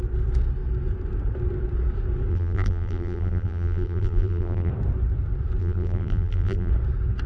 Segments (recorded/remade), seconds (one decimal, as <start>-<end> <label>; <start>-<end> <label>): 0.0-2.3 recorded; 2.3-4.7 remade; 4.7-5.6 recorded; 5.6-6.7 remade; 6.7-7.3 recorded